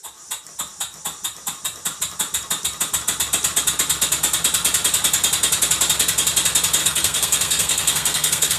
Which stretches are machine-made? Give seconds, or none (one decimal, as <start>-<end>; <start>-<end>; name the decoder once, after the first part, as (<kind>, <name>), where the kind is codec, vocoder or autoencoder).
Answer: 6.8-8.6 (codec, SNAC)